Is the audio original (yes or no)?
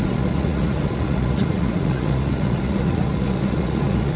no